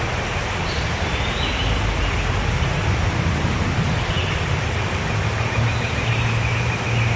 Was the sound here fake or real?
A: real